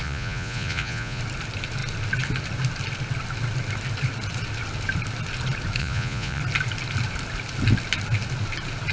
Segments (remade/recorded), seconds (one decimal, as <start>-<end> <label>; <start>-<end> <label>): 0.0-1.2 remade; 1.2-5.8 recorded; 5.8-6.4 remade; 6.4-8.9 recorded